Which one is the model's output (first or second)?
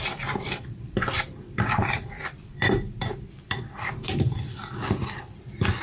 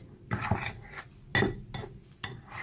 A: first